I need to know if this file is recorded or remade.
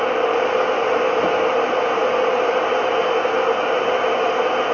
recorded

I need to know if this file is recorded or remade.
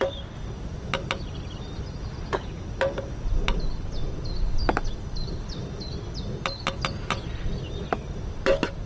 recorded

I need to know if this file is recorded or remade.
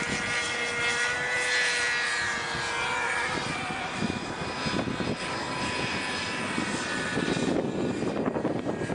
recorded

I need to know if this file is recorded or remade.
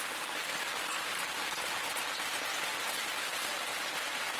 recorded